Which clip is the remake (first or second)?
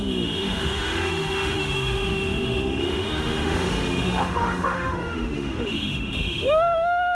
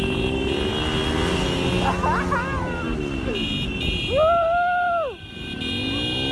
first